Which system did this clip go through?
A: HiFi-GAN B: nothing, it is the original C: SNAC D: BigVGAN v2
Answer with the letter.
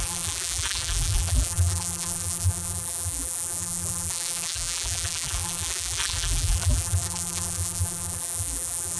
D